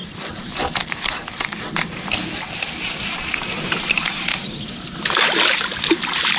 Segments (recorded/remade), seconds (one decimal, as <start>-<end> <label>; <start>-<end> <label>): 0.0-3.8 remade; 3.8-4.3 recorded; 4.3-5.0 remade; 5.0-6.4 recorded